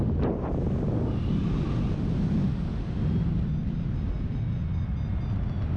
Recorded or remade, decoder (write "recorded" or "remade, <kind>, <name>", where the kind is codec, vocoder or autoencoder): recorded